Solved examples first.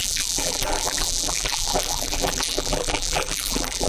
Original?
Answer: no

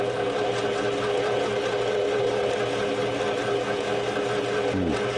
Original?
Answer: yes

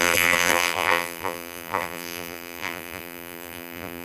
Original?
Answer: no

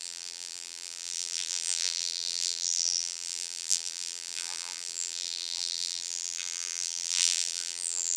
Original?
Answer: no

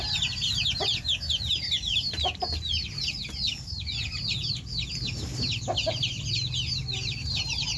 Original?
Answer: yes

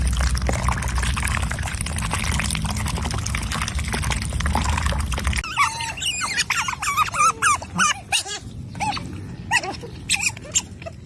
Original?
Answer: yes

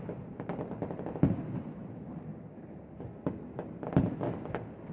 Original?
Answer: yes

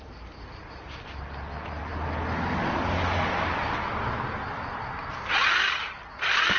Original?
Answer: yes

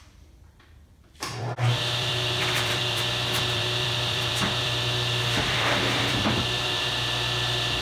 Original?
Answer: no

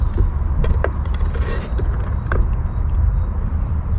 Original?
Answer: yes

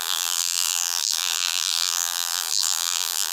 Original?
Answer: no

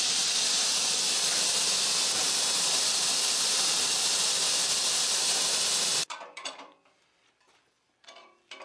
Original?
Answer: no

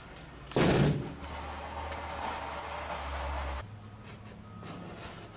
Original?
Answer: yes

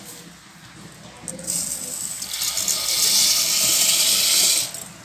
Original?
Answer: yes